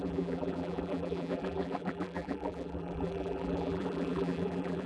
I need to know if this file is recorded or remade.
remade